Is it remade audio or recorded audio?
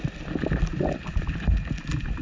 recorded